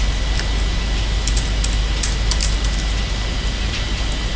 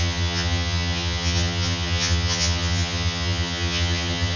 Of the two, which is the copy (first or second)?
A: second